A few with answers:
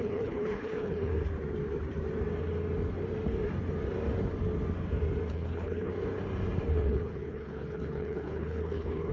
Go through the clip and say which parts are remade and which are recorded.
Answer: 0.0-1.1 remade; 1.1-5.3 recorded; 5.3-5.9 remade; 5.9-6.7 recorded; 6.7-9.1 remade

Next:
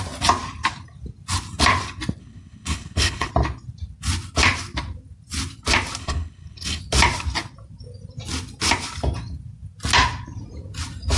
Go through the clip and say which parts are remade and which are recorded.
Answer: 0.0-2.2 recorded; 2.2-3.3 remade; 3.3-6.0 recorded; 6.0-6.8 remade; 6.8-11.2 recorded